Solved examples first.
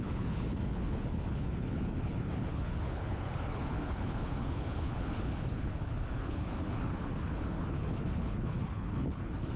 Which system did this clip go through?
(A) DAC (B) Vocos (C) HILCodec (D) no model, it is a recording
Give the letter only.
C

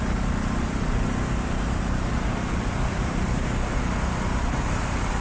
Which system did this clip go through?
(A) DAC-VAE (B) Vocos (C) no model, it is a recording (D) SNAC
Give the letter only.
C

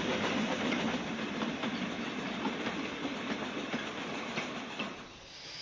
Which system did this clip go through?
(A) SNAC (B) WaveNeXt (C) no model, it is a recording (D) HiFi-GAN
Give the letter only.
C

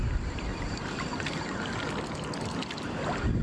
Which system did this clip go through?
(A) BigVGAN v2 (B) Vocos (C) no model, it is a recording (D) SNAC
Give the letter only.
C